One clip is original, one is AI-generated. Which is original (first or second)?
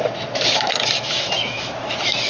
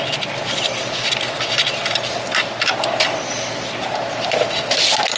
second